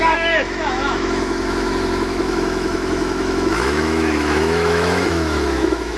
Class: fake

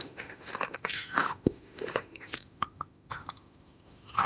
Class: fake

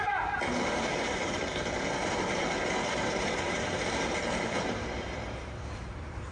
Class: fake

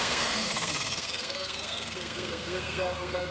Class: fake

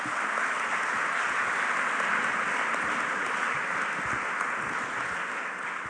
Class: real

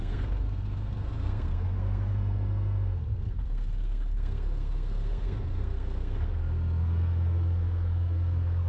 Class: fake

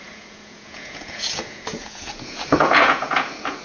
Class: fake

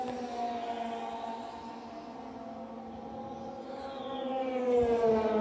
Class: real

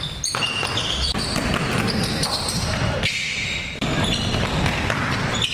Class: real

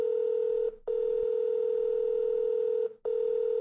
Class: real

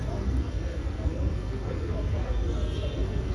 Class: fake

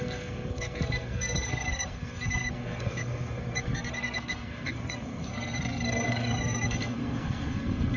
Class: fake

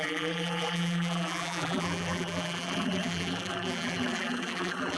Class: fake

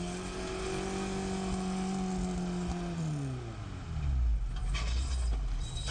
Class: real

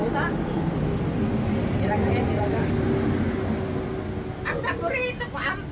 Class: real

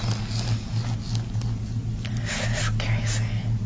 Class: real